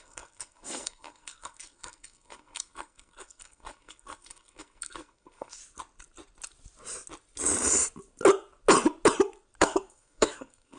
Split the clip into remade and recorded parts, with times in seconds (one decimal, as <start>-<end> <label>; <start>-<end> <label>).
0.0-5.6 remade; 5.6-9.6 recorded; 9.6-10.8 remade